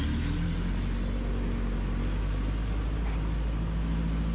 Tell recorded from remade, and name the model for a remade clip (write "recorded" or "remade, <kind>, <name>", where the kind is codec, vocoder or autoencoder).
recorded